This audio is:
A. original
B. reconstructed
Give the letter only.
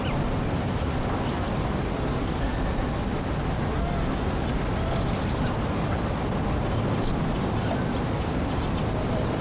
A